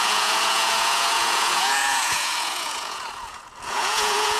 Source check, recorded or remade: remade